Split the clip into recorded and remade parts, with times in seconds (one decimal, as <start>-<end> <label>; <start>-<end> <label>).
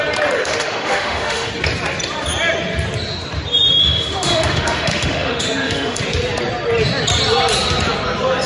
0.0-0.4 recorded; 0.4-1.5 remade; 1.5-3.8 recorded; 3.8-6.0 remade; 6.0-8.5 recorded